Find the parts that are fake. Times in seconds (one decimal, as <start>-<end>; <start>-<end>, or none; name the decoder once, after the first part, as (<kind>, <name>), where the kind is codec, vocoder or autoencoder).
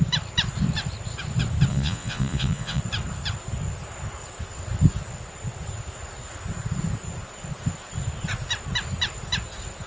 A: 1.7-2.8 (vocoder, Vocos)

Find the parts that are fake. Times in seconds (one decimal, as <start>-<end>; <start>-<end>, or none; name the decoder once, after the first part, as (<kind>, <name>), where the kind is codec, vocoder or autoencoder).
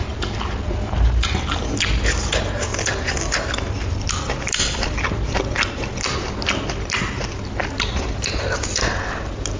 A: none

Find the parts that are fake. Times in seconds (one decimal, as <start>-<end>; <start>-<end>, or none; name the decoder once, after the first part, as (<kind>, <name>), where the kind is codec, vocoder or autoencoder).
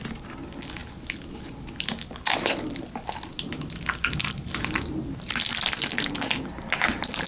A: none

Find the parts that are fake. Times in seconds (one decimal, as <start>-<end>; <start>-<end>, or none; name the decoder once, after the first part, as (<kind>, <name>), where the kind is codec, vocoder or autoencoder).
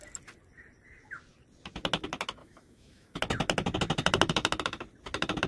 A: 2.4-3.2 (autoencoder, DAC-VAE)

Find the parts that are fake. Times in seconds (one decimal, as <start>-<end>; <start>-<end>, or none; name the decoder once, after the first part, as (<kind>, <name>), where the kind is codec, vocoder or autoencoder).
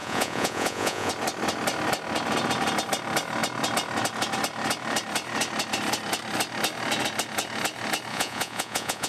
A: 0.0-1.1 (vocoder, Vocos); 8.1-9.1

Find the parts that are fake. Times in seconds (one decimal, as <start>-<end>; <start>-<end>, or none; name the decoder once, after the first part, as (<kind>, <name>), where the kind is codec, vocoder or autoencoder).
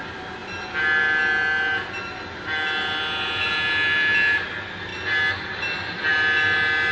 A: none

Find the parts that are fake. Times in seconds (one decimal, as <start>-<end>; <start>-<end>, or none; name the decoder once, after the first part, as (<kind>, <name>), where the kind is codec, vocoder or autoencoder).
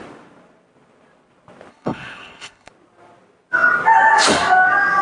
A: 1.7-2.7 (codec, HILCodec)